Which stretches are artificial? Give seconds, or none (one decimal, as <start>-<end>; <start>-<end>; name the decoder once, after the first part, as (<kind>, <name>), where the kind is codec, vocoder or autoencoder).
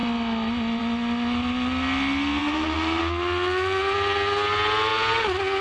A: 2.4-3.0 (vocoder, BigVGAN v2)